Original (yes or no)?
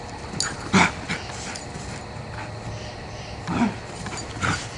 yes